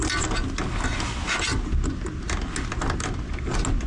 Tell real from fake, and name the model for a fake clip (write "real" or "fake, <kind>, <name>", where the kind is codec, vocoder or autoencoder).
real